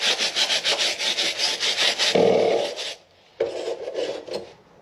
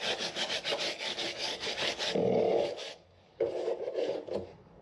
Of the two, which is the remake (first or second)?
second